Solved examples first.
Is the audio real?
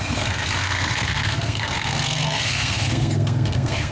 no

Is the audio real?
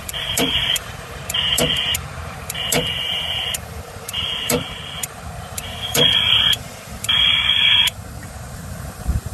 no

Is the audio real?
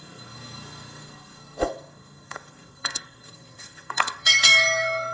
no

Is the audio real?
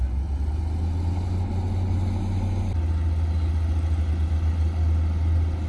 yes